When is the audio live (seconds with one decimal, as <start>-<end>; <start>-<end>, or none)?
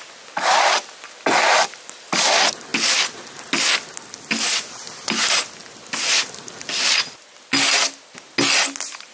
0.0-9.1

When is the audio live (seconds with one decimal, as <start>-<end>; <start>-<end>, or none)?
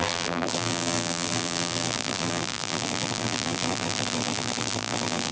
none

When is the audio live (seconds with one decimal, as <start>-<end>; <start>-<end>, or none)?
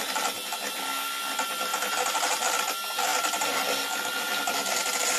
0.0-5.2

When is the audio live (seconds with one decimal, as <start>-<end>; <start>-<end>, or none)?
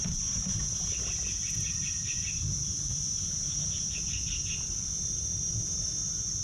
0.0-2.9; 5.5-6.4